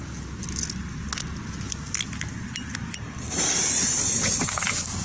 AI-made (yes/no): no